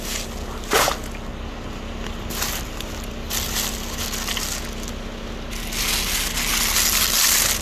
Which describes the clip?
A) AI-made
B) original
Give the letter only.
B